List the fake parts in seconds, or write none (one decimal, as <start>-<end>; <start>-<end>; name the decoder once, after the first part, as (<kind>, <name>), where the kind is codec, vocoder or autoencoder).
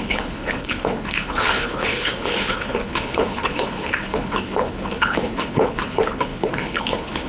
0.0-7.3 (codec, HILCodec)